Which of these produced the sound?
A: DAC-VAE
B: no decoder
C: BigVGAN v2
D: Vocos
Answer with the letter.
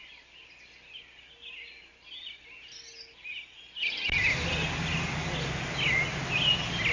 B